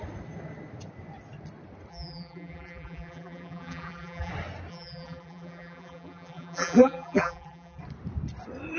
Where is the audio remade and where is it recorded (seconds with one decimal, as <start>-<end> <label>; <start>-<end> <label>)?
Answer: 0.0-1.9 recorded; 1.9-4.3 remade; 4.3-4.7 recorded; 4.7-7.8 remade; 7.8-8.8 recorded